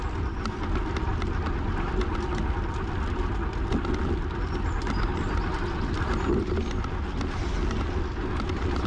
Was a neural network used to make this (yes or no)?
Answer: no